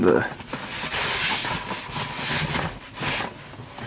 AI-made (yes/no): no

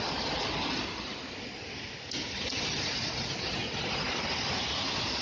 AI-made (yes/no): no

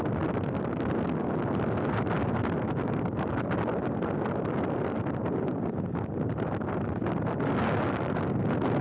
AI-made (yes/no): no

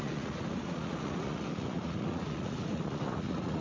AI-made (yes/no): yes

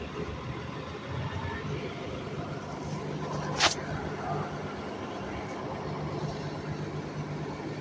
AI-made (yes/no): no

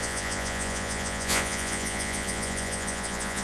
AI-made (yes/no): yes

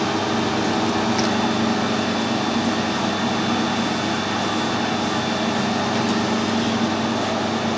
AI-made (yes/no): no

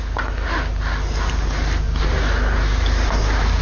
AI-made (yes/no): no